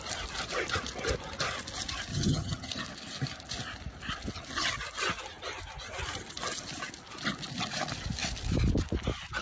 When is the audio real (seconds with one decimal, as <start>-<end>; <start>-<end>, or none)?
0.0-2.1; 2.7-9.4